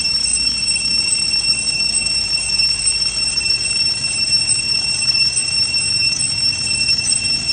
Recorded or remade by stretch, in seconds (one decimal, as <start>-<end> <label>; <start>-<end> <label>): 0.0-7.5 remade